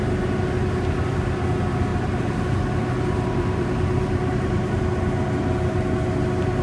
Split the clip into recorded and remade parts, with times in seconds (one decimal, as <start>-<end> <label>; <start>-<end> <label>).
0.0-1.9 recorded; 1.9-4.8 remade; 4.8-6.6 recorded